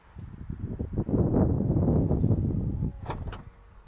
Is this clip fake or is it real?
real